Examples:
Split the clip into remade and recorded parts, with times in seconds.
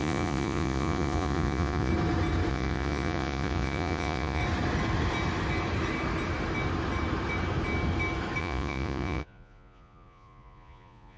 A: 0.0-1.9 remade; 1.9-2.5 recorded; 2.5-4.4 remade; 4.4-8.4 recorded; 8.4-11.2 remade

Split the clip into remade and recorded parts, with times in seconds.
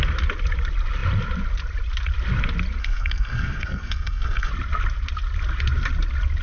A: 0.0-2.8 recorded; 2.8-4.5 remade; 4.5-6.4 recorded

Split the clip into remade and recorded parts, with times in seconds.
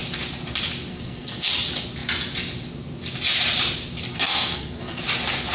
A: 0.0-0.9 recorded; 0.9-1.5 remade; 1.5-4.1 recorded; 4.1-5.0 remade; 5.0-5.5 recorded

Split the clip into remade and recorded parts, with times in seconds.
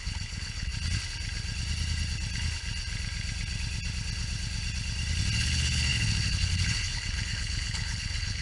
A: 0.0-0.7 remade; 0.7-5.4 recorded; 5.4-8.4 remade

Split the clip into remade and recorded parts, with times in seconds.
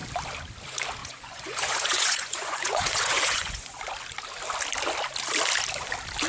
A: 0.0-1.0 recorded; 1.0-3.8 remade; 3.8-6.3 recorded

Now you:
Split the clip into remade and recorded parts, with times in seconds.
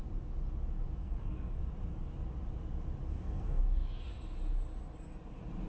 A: 0.0-1.0 recorded; 1.0-1.6 remade; 1.6-3.1 recorded; 3.1-3.6 remade; 3.6-5.7 recorded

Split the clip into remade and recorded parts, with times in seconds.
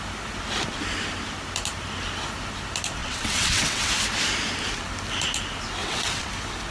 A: 0.0-3.0 recorded; 3.0-3.9 remade; 3.9-5.8 recorded; 5.8-6.3 remade; 6.3-6.7 recorded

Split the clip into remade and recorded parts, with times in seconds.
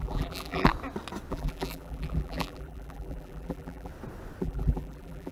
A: 0.0-0.7 remade; 0.7-1.3 recorded; 1.3-3.9 remade; 3.9-4.4 recorded; 4.4-5.3 remade